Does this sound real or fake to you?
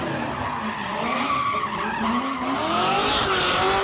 real